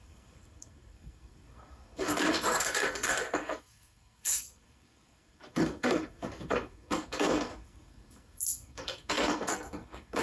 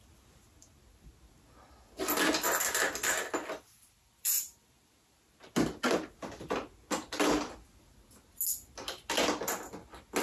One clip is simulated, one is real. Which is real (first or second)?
second